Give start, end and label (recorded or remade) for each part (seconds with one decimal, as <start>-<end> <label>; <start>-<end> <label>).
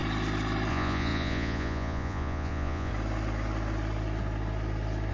0.0-0.7 recorded; 0.7-2.9 remade; 2.9-5.1 recorded